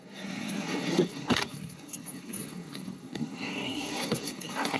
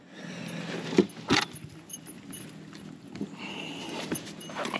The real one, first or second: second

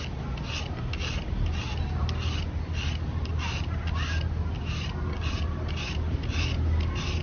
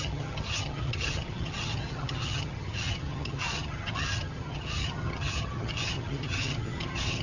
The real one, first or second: first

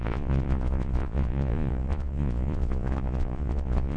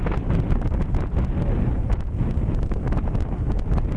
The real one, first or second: second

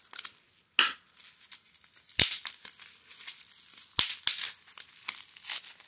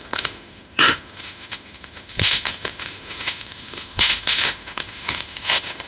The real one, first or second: first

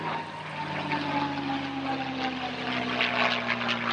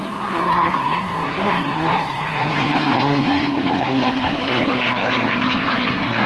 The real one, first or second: first